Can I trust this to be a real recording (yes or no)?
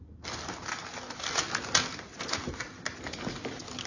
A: yes